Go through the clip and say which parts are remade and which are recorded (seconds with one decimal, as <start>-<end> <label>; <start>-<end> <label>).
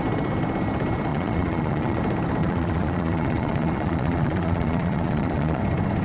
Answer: 0.0-1.1 recorded; 1.1-2.0 remade; 2.0-2.4 recorded; 2.4-5.6 remade; 5.6-6.0 recorded